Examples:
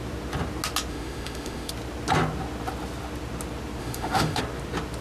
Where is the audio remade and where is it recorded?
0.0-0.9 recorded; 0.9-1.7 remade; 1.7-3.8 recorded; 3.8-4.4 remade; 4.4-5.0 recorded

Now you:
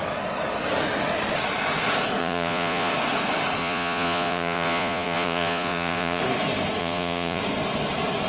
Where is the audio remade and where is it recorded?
0.0-2.2 recorded; 2.2-2.9 remade; 2.9-3.6 recorded; 3.6-6.2 remade; 6.2-6.8 recorded; 6.8-7.4 remade; 7.4-8.3 recorded

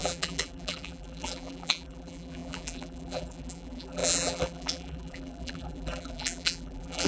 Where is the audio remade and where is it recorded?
0.0-7.1 remade

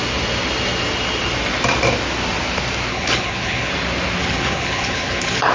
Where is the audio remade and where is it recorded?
0.0-2.9 recorded; 2.9-3.7 remade; 3.7-4.2 recorded; 4.2-5.5 remade